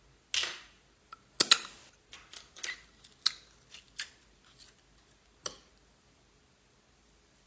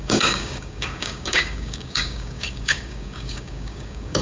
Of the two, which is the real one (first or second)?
first